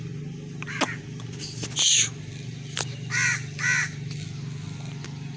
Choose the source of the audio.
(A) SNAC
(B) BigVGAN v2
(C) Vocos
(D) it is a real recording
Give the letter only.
D